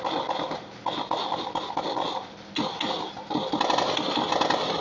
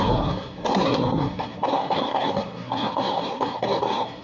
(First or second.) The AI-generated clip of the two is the second